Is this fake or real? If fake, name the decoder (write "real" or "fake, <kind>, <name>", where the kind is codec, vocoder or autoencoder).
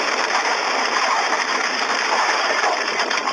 fake, vocoder, BigVGAN v2